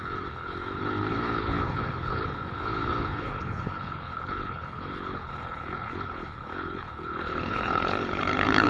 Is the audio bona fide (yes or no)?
no